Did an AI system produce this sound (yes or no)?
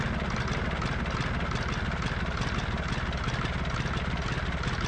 no